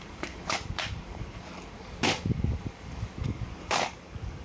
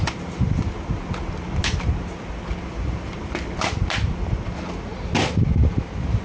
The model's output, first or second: first